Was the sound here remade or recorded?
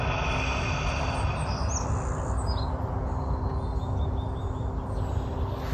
recorded